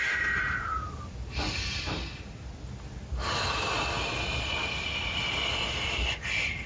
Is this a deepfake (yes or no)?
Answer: no